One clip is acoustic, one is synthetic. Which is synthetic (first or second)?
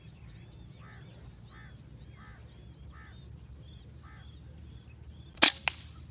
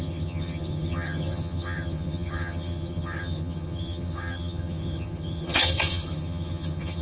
second